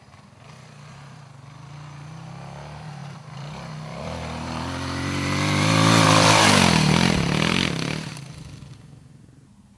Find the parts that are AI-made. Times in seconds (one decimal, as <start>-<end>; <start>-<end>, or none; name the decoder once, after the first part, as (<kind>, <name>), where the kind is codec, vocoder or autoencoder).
3.0-7.5 (vocoder, BigVGAN v2)